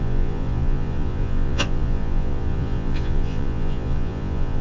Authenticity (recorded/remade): remade